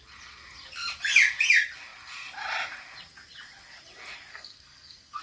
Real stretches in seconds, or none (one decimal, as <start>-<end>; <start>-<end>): 0.0-4.3